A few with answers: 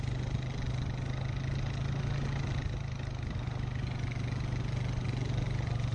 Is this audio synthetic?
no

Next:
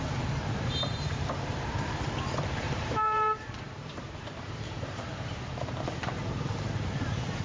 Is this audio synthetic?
yes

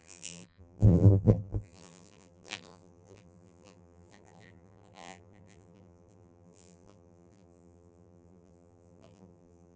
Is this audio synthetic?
yes